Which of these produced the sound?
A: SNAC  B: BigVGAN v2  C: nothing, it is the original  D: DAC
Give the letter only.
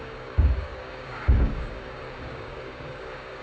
D